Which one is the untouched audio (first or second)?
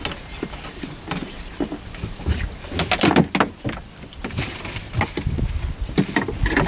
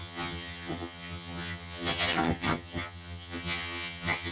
first